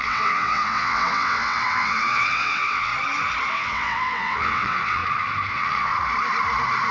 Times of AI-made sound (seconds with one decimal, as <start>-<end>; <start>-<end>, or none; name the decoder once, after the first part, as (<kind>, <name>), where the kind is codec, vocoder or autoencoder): 0.0-2.9 (vocoder, WaveNeXt); 3.5-5.0; 5.5-5.9